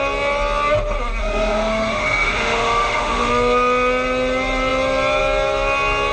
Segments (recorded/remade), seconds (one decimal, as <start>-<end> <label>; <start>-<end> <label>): 0.0-1.2 recorded; 1.2-3.3 remade; 3.3-6.1 recorded